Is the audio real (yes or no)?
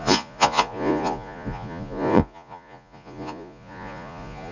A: no